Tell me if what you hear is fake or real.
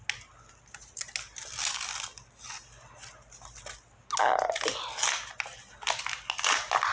real